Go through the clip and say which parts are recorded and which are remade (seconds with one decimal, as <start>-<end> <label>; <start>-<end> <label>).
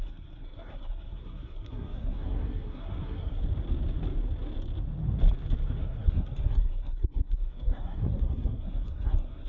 0.0-3.4 remade; 3.4-5.8 recorded; 5.8-9.5 remade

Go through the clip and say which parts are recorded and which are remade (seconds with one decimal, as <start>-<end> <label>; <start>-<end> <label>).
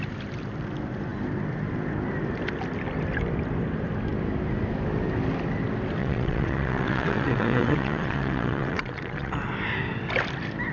0.0-6.0 recorded; 6.0-9.3 remade; 9.3-10.7 recorded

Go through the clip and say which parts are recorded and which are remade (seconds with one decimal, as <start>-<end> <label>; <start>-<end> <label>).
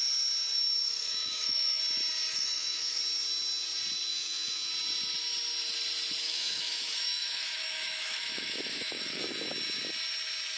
0.0-1.0 recorded; 1.0-1.8 remade; 1.8-2.3 recorded; 2.3-3.0 remade; 3.0-4.1 recorded; 4.1-4.7 remade; 4.7-6.2 recorded; 6.2-9.2 remade; 9.2-10.6 recorded